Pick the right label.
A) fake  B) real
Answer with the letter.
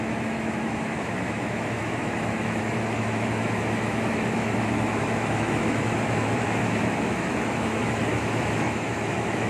A